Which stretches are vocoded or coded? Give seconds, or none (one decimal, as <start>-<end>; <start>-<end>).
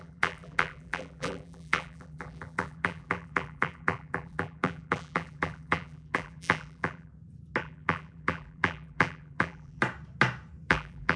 0.0-7.1; 7.6-9.8; 10.7-11.2